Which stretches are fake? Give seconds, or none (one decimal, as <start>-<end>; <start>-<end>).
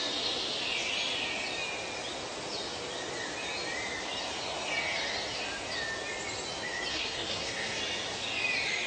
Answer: 6.9-7.8